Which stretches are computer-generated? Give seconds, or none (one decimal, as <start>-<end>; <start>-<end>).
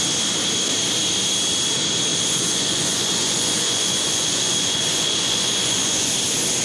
2.1-6.1